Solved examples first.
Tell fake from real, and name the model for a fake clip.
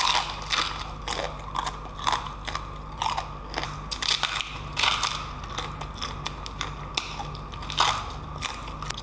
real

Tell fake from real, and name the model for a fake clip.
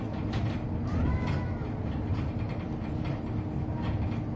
real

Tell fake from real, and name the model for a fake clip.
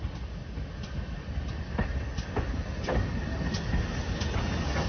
real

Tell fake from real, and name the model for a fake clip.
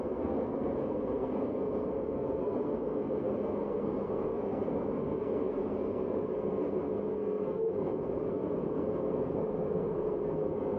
fake, codec, SNAC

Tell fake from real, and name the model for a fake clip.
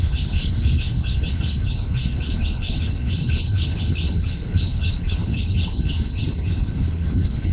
fake, codec, HILCodec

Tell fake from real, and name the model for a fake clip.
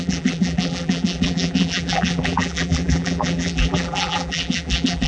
fake, vocoder, BigVGAN v2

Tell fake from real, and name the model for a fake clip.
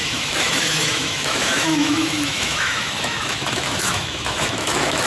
fake, autoencoder, DAC-VAE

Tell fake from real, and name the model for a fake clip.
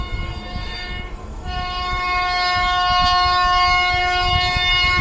fake, autoencoder, DAC-VAE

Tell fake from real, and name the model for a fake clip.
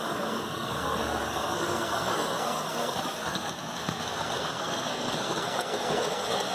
fake, codec, SNAC